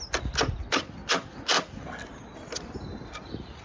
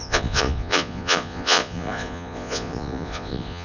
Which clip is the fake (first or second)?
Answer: second